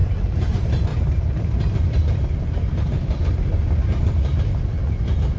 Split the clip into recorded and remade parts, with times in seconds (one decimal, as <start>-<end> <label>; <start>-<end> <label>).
0.0-0.5 remade; 0.5-0.9 recorded; 0.9-3.3 remade; 3.3-3.9 recorded; 3.9-4.4 remade; 4.4-5.4 recorded